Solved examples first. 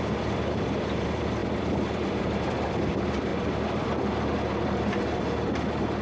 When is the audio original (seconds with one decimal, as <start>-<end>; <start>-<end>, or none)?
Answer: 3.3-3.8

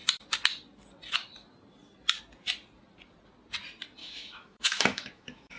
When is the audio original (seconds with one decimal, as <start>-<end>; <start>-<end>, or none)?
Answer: 0.0-4.0

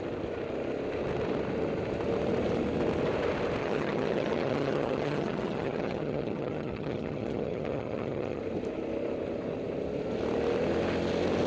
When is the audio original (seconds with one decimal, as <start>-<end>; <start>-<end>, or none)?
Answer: 0.0-3.6; 8.4-11.5

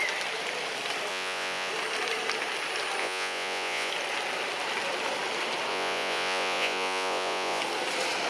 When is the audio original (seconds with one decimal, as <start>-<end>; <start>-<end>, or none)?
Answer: 0.0-1.1; 1.7-3.0; 3.9-5.7; 7.6-8.3

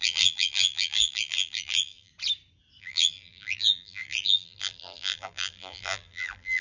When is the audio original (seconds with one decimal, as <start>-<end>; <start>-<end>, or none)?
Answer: 2.1-2.8